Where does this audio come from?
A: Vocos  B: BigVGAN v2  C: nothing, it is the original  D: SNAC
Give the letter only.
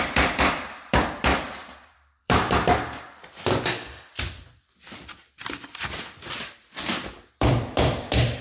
B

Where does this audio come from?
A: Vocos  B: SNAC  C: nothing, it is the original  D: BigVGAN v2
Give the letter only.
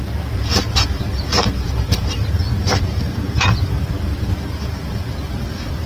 D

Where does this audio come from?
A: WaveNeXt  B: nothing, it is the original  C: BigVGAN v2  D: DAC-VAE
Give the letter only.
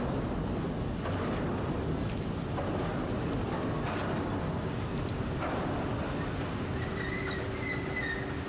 B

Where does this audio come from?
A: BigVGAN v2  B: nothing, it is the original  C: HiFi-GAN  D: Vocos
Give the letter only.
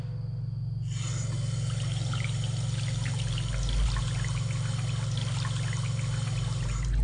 B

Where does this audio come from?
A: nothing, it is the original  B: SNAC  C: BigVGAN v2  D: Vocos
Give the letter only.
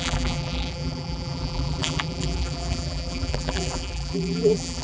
C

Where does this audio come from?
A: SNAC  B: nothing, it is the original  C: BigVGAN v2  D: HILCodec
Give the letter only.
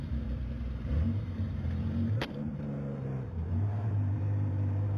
C